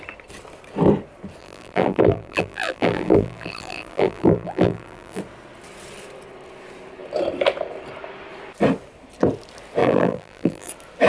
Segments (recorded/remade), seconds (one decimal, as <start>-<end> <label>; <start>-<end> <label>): 0.0-1.4 recorded; 1.4-5.2 remade; 5.2-9.8 recorded; 9.8-10.7 remade; 10.7-11.1 recorded